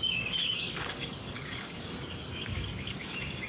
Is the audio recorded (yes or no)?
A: no